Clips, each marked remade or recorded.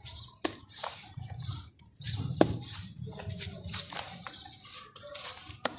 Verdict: remade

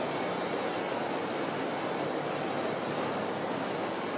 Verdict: recorded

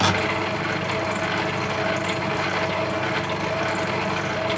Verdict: recorded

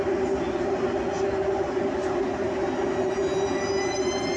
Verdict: recorded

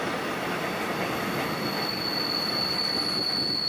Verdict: recorded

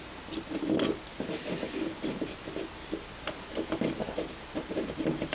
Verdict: recorded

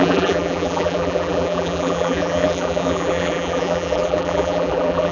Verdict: remade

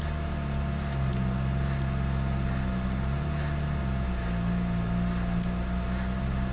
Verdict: recorded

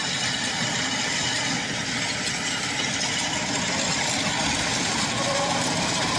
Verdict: recorded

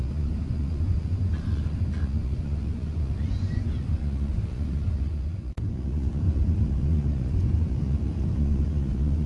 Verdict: remade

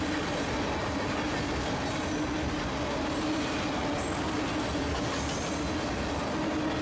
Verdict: recorded